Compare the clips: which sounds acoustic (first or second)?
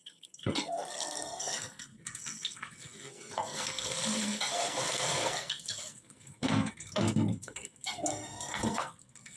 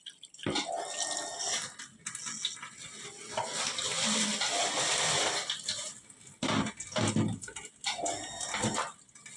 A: second